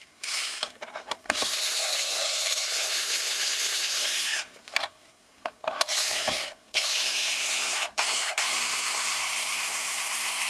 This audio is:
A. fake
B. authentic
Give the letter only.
A